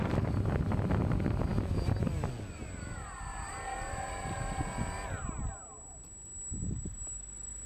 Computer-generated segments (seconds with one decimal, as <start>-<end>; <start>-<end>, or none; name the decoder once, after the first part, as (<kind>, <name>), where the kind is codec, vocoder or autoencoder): none